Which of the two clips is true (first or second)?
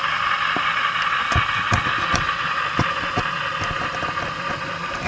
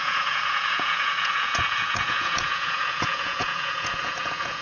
first